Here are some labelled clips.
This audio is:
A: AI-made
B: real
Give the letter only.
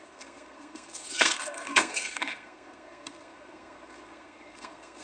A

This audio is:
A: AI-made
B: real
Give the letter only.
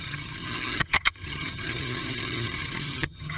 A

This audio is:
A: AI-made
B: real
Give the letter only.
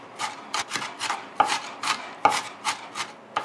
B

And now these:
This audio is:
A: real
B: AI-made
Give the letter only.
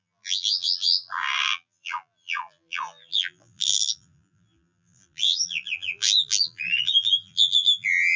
B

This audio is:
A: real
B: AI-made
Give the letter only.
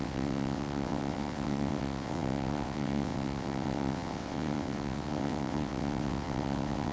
B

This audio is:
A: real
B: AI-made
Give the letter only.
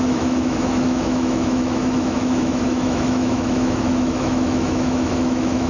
B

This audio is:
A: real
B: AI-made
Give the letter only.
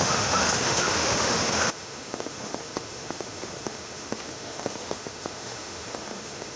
B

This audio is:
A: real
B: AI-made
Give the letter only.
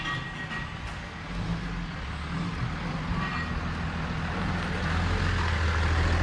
A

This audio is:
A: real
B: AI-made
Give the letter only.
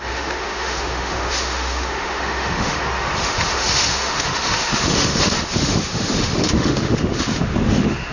B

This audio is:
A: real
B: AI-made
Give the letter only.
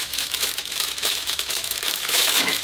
B